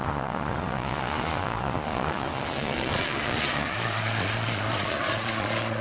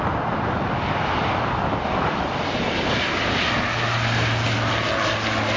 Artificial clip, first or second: first